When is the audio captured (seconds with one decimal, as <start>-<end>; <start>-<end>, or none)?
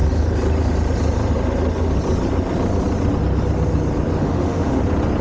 0.0-4.2; 4.8-5.2